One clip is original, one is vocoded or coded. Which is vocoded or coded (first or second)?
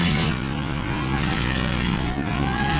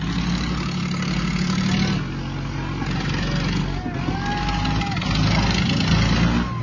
first